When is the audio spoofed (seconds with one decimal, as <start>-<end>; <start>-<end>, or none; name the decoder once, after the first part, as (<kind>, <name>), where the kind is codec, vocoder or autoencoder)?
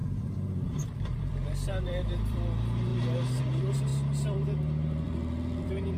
0.0-2.9 (vocoder, BigVGAN v2); 3.4-6.0